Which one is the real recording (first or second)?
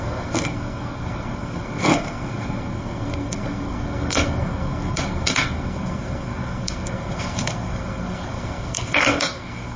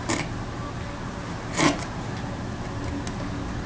second